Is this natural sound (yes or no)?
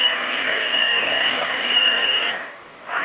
no